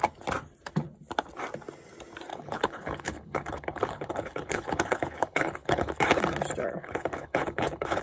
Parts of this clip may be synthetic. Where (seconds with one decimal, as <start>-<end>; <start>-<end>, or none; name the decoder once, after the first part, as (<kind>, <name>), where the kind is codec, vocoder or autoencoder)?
2.3-6.2 (codec, HILCodec); 6.8-8.0